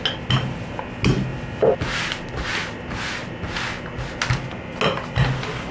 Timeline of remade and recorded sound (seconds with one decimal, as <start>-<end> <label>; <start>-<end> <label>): 0.0-5.7 recorded